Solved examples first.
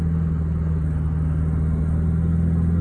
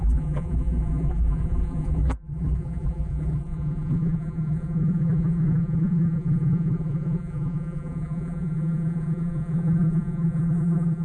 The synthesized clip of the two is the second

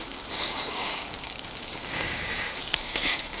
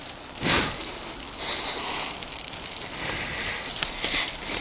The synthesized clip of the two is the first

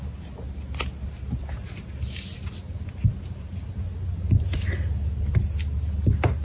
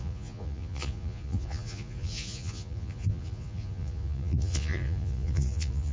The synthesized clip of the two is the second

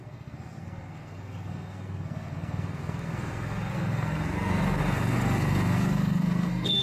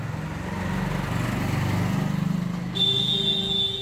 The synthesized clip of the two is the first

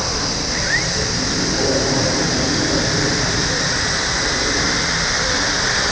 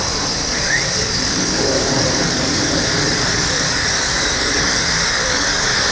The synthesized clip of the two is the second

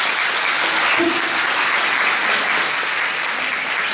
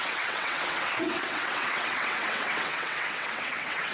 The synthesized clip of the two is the second